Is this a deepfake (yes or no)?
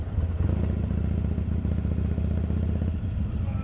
no